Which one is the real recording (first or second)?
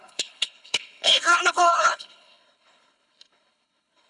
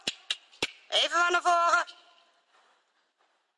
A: second